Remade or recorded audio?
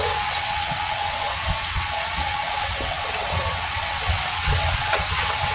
remade